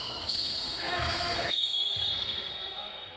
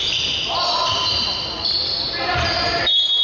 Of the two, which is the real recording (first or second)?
second